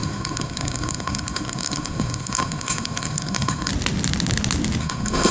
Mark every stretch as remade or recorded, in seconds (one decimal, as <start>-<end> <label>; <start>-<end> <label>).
0.0-3.7 remade; 3.7-4.8 recorded; 4.8-5.3 remade

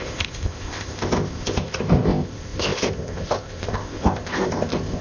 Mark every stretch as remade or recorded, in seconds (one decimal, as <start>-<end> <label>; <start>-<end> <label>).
0.0-5.0 remade

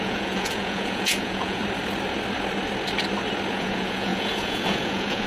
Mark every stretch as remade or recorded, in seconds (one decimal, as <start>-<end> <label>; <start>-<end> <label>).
0.0-1.6 remade; 1.6-3.5 recorded; 3.5-5.3 remade